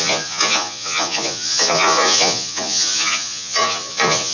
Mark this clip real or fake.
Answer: fake